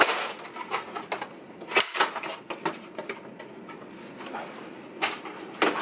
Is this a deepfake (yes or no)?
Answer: no